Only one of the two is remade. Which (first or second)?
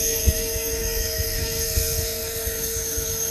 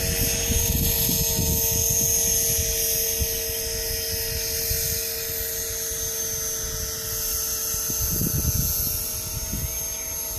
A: first